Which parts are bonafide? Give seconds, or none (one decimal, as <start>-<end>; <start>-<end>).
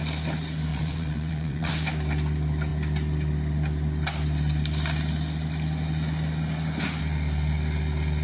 0.0-0.7; 1.7-8.2